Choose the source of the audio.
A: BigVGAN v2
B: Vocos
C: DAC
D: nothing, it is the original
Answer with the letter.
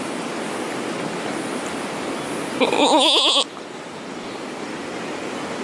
D